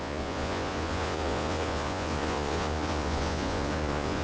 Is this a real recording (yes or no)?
no